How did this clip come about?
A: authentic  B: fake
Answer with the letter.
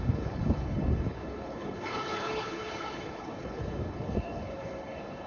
B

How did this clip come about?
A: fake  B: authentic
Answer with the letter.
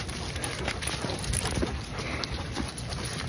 B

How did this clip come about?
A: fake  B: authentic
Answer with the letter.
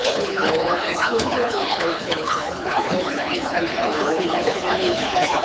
A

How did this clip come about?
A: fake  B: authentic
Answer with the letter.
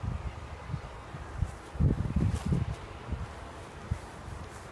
B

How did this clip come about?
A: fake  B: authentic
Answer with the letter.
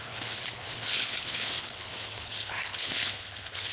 A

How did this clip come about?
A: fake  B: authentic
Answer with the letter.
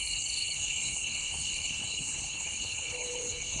A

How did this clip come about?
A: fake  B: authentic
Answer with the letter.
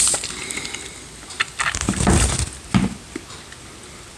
B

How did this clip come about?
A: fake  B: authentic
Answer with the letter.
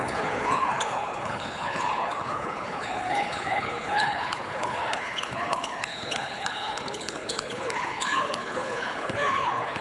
A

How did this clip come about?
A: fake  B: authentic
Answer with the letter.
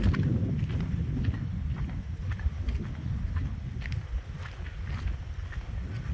B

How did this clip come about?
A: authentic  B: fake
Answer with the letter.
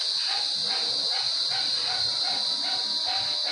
A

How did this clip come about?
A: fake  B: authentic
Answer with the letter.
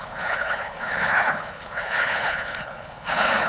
A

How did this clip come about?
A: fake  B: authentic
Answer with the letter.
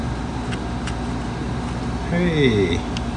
B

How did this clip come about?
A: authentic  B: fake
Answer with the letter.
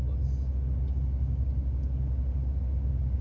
A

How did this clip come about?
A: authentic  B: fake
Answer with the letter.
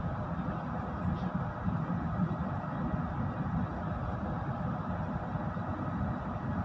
A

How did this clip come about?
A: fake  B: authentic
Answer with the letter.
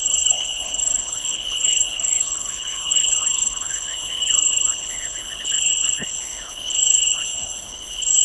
A